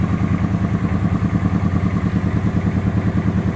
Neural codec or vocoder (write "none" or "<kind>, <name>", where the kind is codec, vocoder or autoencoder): none